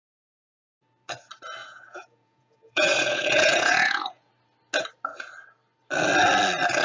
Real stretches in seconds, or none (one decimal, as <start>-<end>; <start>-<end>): 0.0-1.6; 4.3-6.8